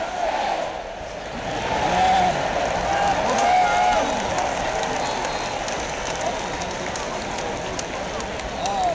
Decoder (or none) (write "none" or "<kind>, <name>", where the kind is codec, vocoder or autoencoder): none